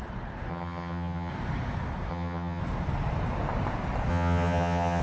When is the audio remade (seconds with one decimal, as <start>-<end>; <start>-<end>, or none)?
0.5-1.3; 2.1-2.6; 4.1-5.0